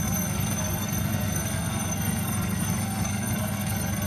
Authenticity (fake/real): fake